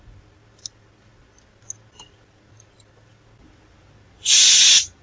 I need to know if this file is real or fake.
real